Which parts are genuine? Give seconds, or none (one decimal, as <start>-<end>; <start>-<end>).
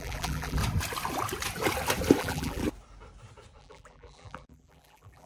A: 0.6-2.2; 2.6-3.6